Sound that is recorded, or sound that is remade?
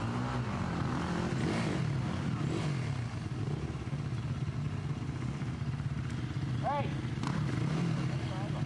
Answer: recorded